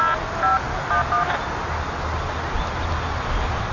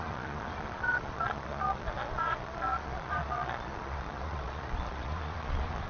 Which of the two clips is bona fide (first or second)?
first